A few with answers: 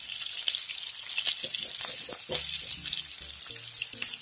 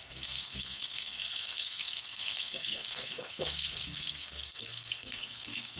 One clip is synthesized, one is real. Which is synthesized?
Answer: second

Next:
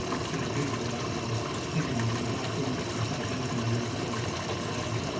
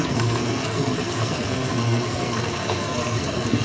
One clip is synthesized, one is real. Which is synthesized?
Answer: second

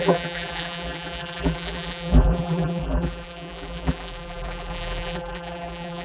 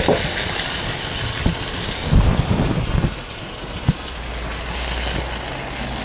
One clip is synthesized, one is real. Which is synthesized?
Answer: first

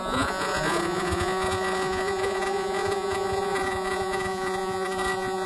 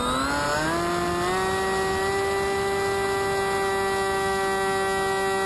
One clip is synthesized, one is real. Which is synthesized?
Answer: first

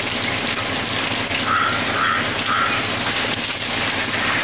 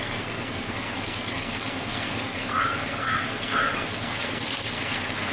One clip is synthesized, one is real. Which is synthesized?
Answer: second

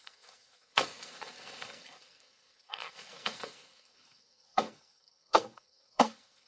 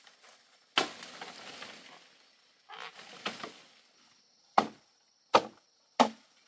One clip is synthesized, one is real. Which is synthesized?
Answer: first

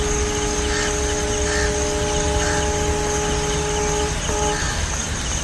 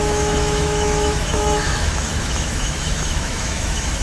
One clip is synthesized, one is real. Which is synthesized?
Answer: second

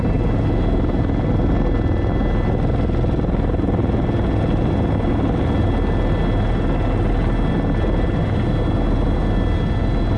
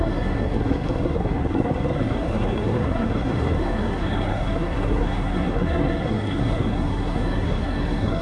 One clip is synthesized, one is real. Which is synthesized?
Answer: second